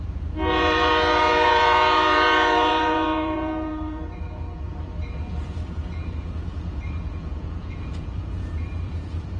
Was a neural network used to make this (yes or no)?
yes